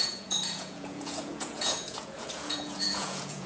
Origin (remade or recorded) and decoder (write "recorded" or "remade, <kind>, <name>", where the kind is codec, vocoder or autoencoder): remade, vocoder, Vocos